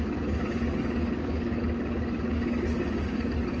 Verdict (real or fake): fake